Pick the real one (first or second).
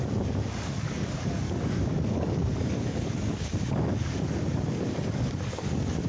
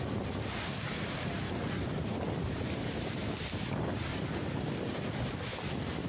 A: second